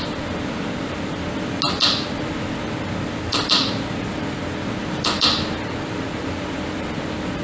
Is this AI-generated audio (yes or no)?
no